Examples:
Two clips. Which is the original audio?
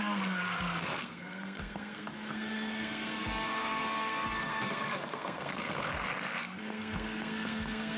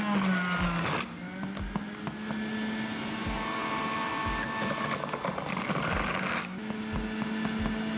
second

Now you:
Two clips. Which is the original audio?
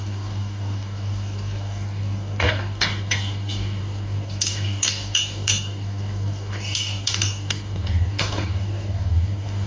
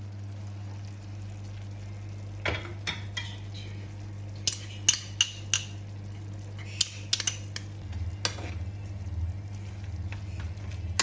second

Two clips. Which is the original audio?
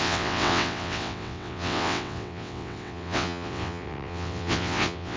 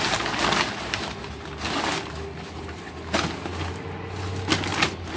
second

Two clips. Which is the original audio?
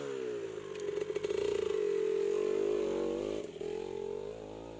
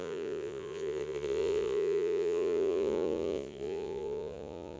first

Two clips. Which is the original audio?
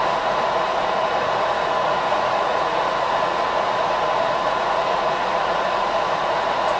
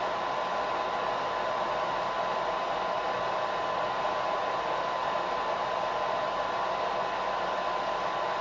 second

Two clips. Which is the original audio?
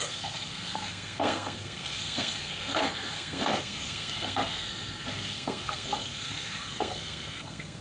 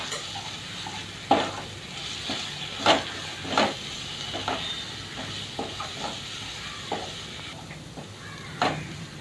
second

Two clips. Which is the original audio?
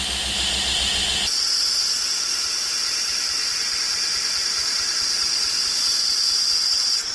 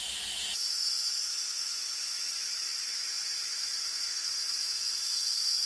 first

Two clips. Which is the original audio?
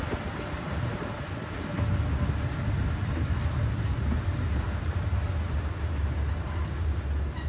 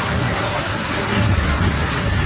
first